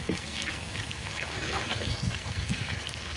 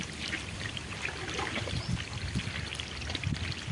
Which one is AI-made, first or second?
first